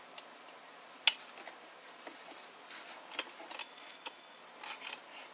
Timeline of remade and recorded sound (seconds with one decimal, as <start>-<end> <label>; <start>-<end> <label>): 0.0-3.6 recorded; 3.6-4.4 remade; 4.4-5.3 recorded